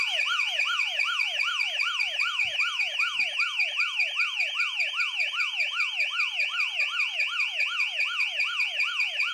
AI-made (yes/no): no